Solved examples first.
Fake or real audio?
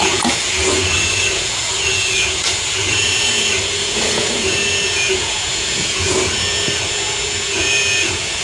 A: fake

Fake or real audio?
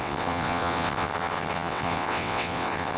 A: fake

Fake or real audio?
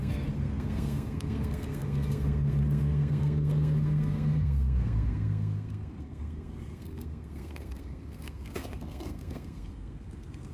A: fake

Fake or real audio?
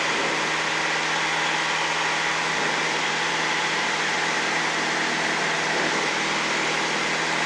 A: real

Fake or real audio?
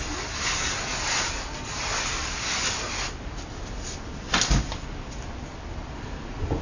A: real